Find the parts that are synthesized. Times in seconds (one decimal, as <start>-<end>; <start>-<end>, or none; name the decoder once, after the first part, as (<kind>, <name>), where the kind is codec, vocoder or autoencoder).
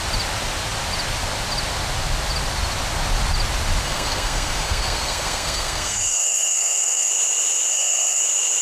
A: 3.8-7.1 (codec, SNAC); 7.7-8.2